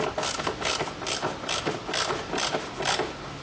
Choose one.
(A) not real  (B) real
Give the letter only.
B